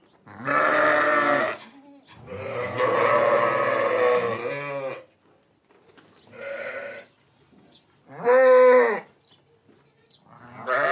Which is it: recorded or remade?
recorded